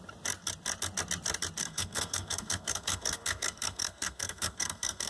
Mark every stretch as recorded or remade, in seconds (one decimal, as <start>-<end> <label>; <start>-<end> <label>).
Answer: 0.0-1.6 recorded; 1.6-5.1 remade